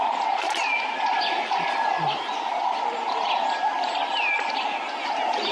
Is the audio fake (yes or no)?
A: no